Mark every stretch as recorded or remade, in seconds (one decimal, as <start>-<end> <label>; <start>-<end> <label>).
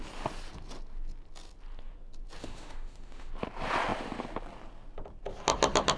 0.0-2.4 recorded; 2.4-3.3 remade; 3.3-6.0 recorded